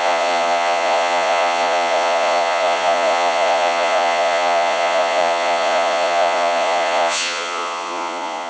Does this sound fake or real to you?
fake